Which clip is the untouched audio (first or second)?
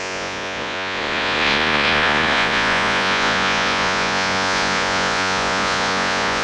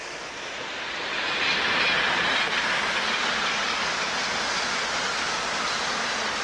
second